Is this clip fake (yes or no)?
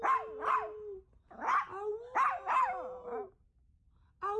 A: no